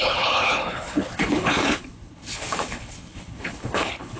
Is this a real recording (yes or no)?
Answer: no